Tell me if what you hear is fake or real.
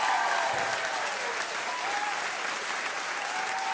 real